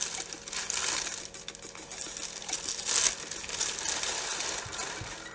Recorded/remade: recorded